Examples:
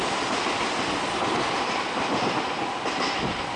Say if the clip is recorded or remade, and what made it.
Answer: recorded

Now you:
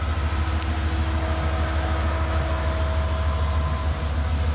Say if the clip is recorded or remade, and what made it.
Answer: recorded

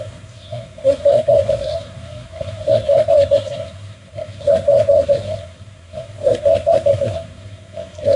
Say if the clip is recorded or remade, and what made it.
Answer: remade, codec, SNAC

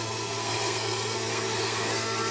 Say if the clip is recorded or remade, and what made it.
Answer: remade, codec, SNAC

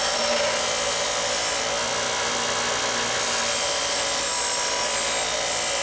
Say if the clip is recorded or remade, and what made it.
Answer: recorded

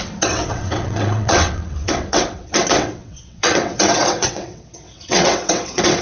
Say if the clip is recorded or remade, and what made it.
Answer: remade, vocoder, WaveNeXt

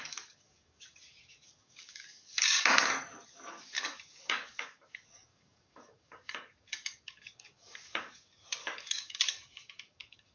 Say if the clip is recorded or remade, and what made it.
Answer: remade, codec, DAC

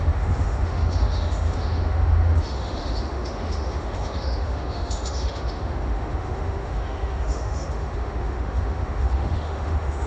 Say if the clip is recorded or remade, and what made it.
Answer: remade, autoencoder, DAC-VAE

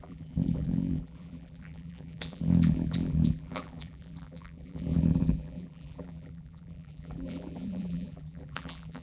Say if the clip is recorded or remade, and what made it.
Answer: remade, vocoder, BigVGAN v2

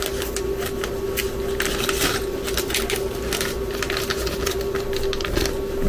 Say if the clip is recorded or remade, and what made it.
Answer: recorded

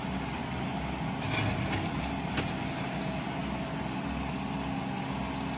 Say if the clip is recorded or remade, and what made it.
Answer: recorded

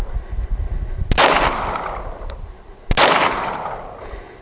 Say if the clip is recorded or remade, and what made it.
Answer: recorded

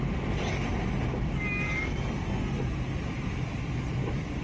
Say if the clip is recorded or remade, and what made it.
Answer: recorded